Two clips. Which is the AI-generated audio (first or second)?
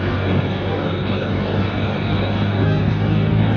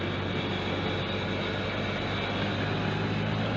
first